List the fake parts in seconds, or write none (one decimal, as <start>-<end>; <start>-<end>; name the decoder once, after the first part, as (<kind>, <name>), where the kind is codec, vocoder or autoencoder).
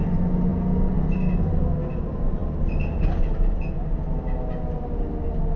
none